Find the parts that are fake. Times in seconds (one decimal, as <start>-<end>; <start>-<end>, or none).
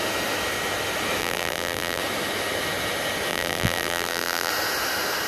1.2-2.0; 3.3-4.5